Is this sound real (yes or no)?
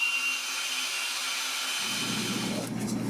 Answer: yes